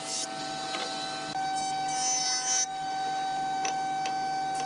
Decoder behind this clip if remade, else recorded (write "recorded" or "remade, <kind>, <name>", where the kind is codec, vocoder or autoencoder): recorded